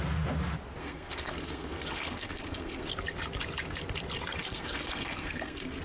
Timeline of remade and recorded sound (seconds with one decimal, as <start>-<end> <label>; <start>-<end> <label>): 0.0-0.8 recorded; 0.8-2.9 remade; 2.9-4.4 recorded; 4.4-5.8 remade